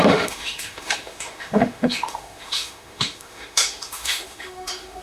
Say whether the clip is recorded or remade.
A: remade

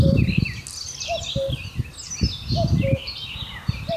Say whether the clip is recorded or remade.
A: recorded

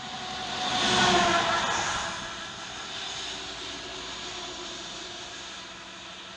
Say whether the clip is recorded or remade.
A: recorded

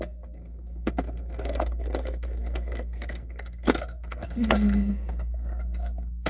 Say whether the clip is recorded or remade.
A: remade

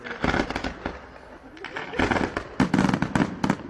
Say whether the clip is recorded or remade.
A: recorded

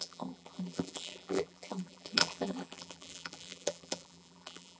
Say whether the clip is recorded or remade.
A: remade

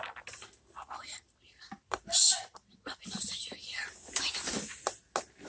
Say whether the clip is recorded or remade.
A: recorded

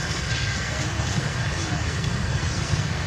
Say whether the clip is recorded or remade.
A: remade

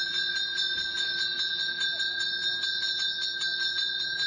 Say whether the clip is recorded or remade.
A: recorded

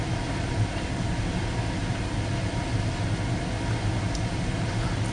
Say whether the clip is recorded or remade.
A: recorded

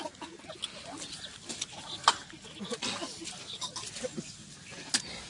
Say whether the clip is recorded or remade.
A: recorded